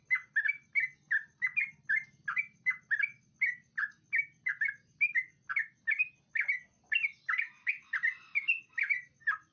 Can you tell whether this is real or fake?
real